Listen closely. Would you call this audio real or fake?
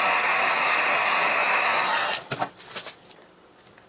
real